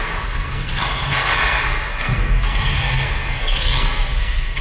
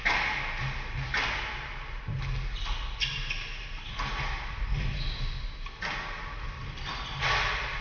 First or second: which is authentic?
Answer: second